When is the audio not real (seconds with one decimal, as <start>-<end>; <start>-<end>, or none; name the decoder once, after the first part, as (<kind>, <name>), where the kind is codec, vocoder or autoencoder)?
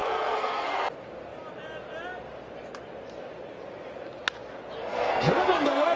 0.0-0.8 (codec, SNAC); 4.8-6.0